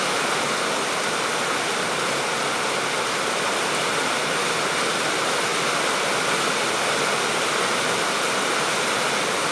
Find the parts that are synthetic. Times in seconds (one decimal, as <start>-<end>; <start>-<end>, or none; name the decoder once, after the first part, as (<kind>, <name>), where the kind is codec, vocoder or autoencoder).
none